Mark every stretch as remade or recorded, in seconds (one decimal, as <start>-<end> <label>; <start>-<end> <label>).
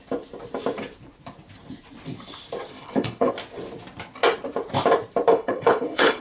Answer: 0.0-2.7 recorded; 2.7-3.3 remade; 3.3-5.3 recorded; 5.3-6.2 remade